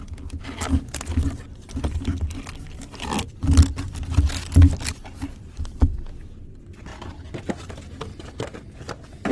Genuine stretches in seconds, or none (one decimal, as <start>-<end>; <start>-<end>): 0.0-9.3